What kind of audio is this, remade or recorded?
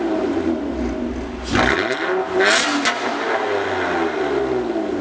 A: recorded